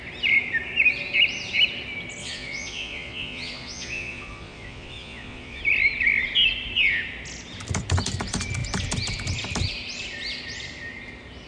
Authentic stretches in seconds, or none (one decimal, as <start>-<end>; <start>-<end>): 0.0-2.2; 5.6-11.5